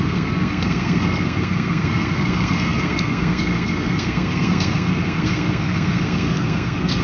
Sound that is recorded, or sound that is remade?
remade